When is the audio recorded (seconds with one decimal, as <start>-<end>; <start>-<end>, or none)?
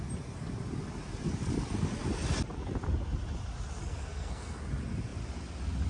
0.0-3.8; 4.6-5.9